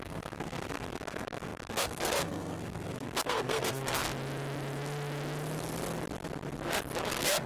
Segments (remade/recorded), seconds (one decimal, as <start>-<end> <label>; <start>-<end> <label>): 0.0-4.0 remade; 4.0-7.1 recorded; 7.1-7.5 remade